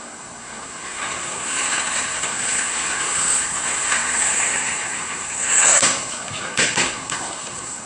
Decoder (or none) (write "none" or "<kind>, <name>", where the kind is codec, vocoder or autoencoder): codec, SNAC